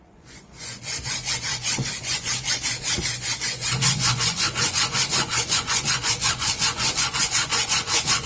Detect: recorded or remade remade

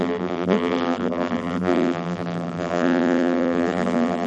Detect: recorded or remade remade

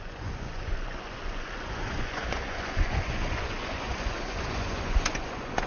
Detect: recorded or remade remade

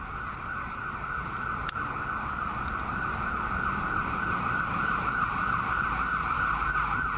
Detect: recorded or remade recorded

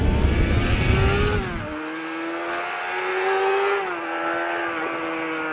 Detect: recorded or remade recorded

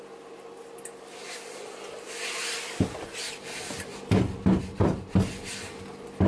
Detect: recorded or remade recorded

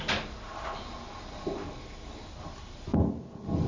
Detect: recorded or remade recorded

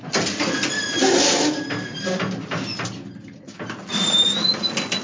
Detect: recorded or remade recorded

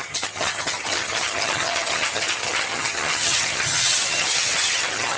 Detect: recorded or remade remade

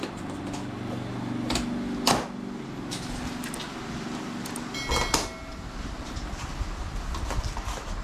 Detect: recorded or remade recorded